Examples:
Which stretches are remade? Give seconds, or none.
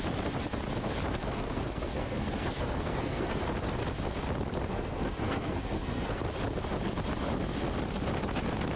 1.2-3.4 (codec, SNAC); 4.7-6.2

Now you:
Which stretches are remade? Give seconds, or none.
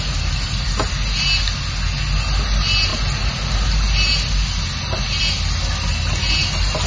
none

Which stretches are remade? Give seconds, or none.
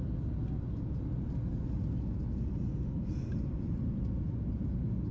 none